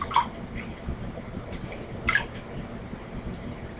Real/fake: real